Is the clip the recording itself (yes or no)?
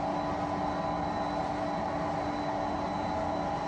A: yes